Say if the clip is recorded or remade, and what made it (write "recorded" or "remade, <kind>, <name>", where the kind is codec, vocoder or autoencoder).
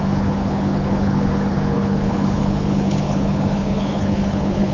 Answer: remade, codec, HILCodec